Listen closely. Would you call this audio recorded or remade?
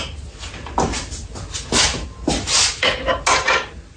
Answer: recorded